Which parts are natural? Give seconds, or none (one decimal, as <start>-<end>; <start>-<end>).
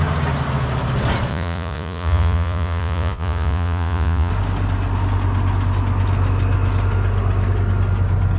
0.0-1.3; 4.3-8.4